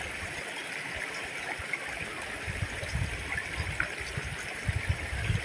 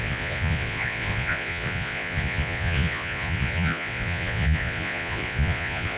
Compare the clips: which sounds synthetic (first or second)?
second